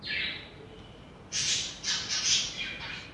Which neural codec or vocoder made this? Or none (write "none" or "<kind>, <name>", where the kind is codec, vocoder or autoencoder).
none